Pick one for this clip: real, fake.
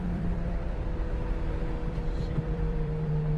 fake